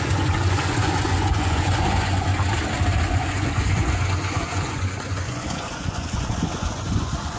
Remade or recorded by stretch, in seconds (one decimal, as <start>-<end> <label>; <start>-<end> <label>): 0.0-2.3 remade; 2.3-3.1 recorded; 3.1-7.4 remade